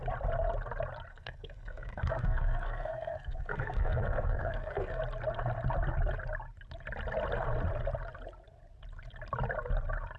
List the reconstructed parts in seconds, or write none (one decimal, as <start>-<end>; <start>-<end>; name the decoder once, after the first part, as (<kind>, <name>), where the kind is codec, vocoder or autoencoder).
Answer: 1.1-5.0 (codec, SNAC)